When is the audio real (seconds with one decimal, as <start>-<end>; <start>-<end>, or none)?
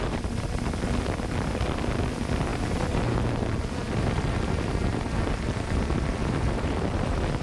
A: none